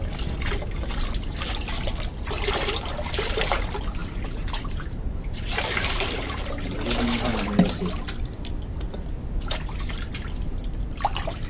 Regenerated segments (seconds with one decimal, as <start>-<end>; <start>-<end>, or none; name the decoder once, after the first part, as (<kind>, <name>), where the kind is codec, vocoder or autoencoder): 4.0-6.4 (vocoder, BigVGAN v2)